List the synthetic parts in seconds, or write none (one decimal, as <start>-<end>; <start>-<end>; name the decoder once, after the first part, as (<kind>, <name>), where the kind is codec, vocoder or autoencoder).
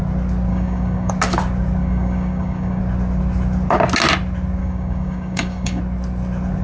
0.5-1.1 (codec, DAC); 1.8-2.8; 4.6-5.8